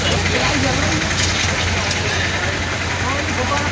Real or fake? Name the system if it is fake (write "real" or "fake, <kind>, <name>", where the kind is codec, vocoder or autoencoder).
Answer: real